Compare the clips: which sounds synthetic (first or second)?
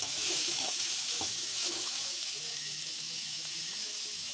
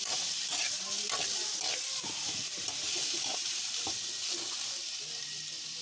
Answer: first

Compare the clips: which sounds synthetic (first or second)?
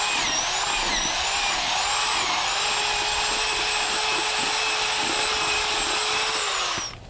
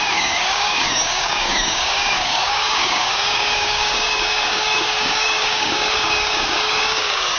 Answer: second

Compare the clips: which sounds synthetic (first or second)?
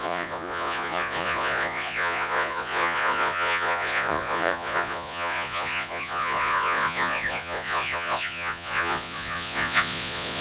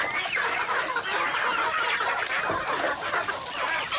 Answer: first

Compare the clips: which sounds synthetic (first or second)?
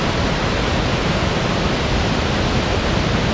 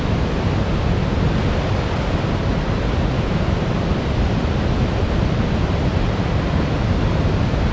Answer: second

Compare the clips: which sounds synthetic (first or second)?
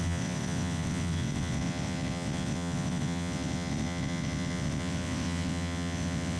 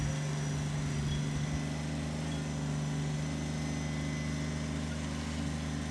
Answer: first